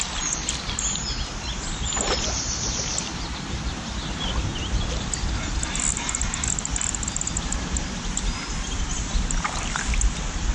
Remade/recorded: recorded